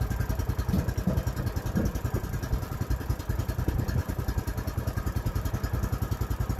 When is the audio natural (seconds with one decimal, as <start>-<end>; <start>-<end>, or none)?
0.0-4.0; 5.5-6.6